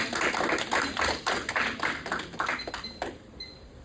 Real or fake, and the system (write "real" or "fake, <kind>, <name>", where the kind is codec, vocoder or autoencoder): real